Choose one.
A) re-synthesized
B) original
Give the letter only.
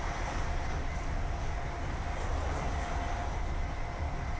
B